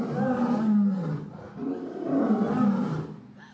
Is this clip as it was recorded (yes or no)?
yes